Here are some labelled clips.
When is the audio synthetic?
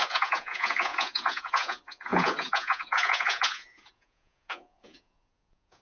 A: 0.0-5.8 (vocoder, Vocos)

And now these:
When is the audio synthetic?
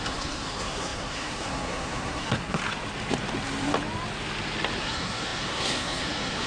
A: 0.0-2.6 (codec, SNAC); 4.8-6.5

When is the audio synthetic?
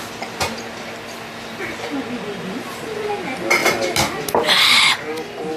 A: none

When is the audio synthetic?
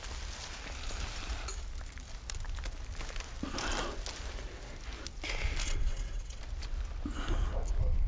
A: 5.6-6.4 (vocoder, WaveNeXt)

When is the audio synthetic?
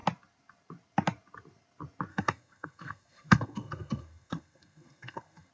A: 2.1-5.5 (codec, SNAC)